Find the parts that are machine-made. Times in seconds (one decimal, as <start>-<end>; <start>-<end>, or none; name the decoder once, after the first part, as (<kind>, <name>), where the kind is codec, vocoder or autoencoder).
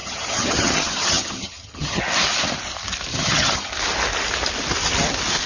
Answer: 0.0-2.0 (vocoder, HiFi-GAN); 3.1-3.7